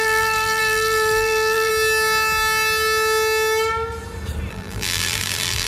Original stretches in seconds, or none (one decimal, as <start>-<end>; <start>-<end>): 1.7-4.5